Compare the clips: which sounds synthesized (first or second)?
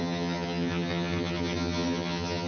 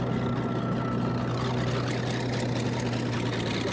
first